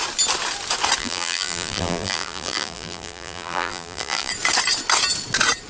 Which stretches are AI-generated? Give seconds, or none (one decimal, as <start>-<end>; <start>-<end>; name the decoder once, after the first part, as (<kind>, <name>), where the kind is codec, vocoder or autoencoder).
1.0-4.3 (vocoder, BigVGAN v2)